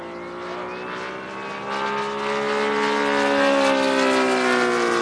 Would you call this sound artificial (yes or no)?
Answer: no